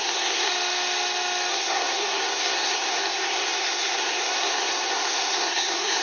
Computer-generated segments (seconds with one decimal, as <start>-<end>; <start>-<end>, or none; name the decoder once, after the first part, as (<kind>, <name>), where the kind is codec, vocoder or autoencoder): 0.0-0.5 (codec, SNAC); 1.5-6.0